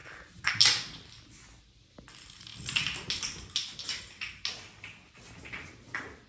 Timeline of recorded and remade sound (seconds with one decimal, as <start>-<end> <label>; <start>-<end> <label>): 0.0-6.3 recorded